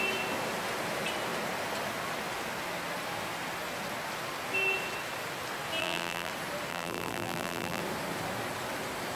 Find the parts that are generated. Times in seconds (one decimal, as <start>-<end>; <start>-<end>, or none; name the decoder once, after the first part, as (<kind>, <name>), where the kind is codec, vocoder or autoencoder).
5.8-6.3 (vocoder, BigVGAN v2); 6.7-7.8